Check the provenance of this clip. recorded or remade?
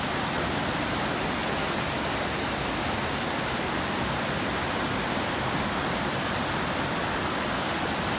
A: recorded